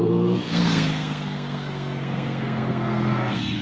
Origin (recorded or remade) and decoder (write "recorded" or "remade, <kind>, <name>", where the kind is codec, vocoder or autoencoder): remade, codec, SNAC